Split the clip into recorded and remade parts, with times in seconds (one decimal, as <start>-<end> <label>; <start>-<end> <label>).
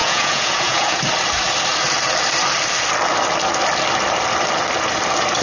0.0-1.0 remade; 1.0-5.4 recorded